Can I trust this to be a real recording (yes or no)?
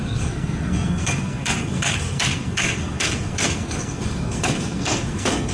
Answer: no